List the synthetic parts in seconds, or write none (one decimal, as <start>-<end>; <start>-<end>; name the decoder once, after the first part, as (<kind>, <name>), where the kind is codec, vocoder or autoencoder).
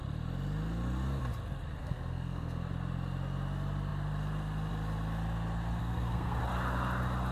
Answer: 1.8-2.7 (codec, SNAC); 5.8-6.4